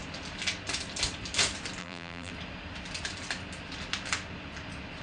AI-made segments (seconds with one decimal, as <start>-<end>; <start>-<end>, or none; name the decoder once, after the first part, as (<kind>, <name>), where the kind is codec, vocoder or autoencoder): 1.8-2.3 (vocoder, BigVGAN v2)